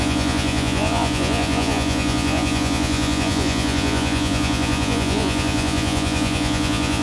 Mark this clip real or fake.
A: fake